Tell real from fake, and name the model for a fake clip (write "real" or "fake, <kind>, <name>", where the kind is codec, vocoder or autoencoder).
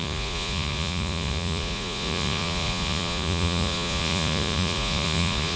fake, vocoder, Vocos